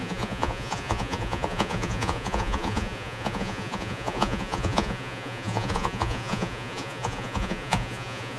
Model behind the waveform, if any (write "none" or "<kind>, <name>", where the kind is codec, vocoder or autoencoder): vocoder, Vocos